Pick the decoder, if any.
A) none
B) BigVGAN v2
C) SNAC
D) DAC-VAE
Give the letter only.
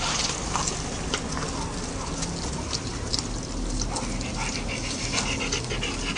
A